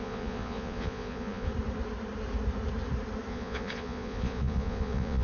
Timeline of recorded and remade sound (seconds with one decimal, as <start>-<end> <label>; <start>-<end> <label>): 0.0-1.5 remade; 1.5-3.3 recorded; 3.3-5.2 remade